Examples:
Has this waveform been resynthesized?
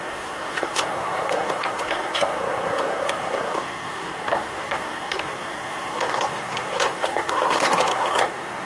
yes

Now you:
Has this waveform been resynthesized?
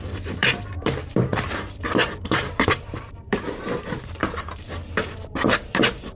yes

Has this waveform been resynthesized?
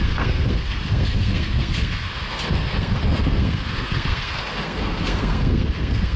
yes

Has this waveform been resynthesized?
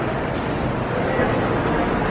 no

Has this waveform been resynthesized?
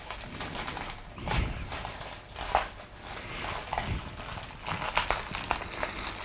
no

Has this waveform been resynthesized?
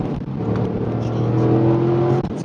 no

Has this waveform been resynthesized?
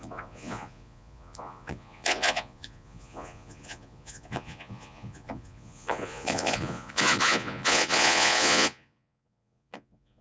yes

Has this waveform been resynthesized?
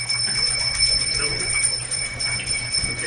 yes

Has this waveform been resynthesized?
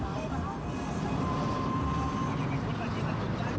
no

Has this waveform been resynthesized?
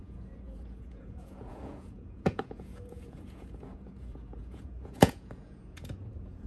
yes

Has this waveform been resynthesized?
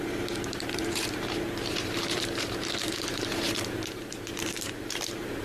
yes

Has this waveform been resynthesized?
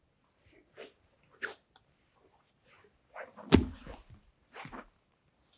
no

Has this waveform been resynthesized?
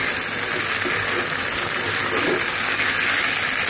no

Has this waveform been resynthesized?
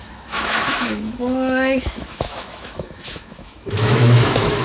yes